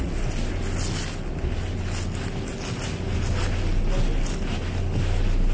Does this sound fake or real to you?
real